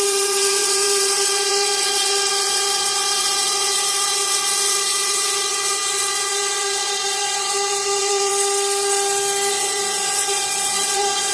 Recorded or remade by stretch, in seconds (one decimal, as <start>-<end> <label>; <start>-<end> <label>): 0.0-8.3 remade; 8.3-9.5 recorded; 9.5-11.3 remade